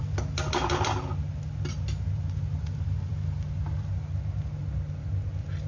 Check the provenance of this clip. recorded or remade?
recorded